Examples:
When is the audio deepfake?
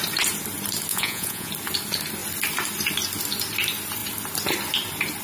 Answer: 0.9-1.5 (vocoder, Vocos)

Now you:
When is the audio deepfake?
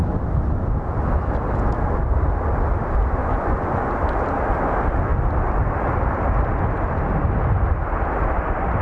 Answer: 3.2-3.9 (vocoder, Vocos)